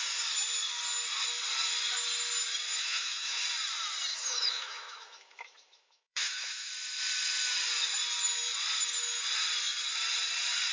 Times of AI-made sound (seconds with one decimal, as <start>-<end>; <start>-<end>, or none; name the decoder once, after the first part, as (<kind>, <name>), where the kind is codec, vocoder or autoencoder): 2.8-3.4 (autoencoder, DAC-VAE); 4.1-6.7